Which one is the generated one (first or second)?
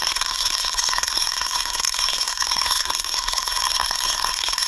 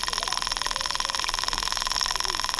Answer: first